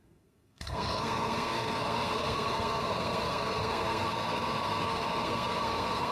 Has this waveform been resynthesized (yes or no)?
yes